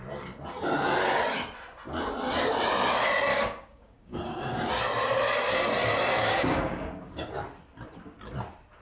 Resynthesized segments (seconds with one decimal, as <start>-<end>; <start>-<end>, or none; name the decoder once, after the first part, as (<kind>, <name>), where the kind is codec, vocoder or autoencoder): 3.3-4.7 (codec, DAC); 6.2-7.3